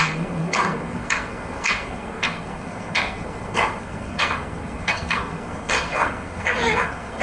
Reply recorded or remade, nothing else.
remade